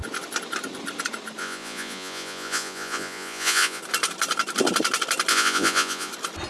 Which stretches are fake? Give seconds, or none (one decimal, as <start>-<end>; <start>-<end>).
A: 1.4-3.8; 5.3-6.1